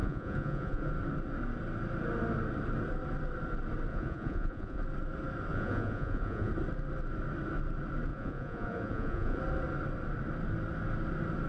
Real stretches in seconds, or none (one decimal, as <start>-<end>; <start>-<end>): 0.9-3.9; 4.8-5.5; 6.5-8.1; 9.4-11.5